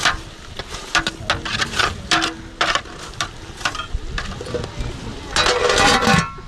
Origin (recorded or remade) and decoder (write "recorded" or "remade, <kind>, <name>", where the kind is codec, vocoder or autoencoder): recorded